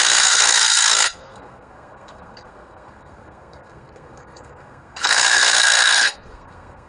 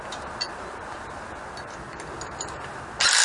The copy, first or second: first